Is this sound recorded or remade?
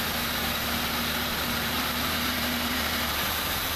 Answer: remade